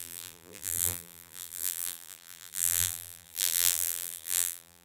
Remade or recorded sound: remade